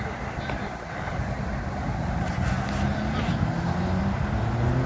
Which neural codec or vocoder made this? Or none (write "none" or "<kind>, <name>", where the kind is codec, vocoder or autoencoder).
none